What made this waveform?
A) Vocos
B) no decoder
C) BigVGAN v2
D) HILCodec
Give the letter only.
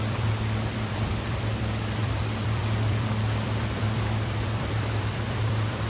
C